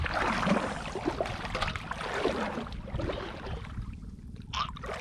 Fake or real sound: real